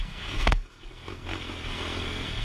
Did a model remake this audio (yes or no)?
yes